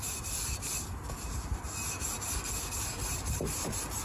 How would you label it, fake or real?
real